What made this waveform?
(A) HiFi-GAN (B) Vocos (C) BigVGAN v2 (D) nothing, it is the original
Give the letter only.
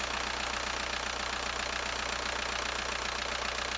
D